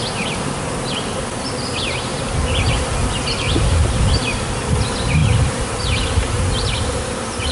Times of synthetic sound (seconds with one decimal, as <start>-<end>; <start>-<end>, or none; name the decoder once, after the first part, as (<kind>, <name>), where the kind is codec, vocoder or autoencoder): 5.2-6.8 (vocoder, BigVGAN v2)